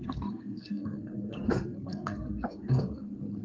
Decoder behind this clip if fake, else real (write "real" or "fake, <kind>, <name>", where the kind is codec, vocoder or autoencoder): fake, codec, SNAC